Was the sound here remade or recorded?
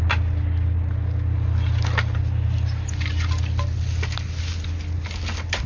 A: recorded